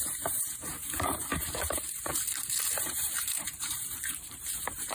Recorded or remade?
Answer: remade